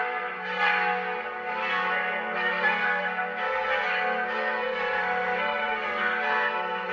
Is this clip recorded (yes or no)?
no